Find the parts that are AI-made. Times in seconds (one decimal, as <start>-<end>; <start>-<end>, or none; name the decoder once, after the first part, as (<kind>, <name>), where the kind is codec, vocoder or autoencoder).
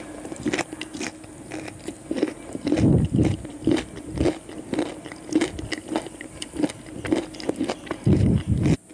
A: none